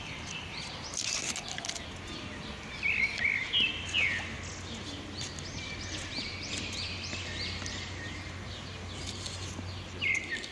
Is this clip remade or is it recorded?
recorded